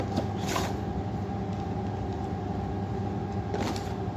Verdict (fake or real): real